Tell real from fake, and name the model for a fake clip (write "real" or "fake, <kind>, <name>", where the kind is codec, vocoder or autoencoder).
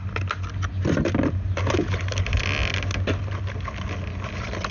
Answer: real